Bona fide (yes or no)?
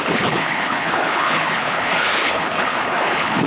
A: no